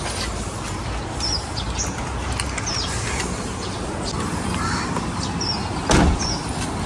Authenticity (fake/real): real